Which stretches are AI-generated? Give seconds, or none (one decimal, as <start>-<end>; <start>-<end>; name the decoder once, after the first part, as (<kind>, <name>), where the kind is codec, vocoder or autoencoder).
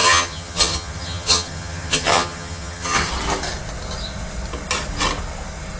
0.0-3.1 (vocoder, HiFi-GAN)